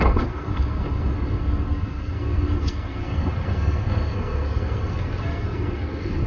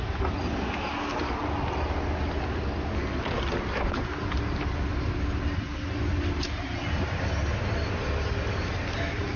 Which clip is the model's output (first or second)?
first